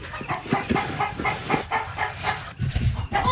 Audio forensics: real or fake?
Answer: real